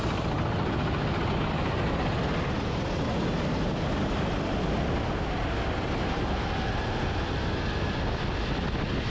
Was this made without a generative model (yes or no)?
yes